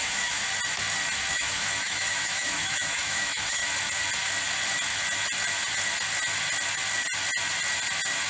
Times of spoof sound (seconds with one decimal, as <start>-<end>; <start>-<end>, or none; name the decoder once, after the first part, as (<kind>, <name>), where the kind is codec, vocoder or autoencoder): 0.0-0.4 (autoencoder, DAC-VAE); 1.3-3.6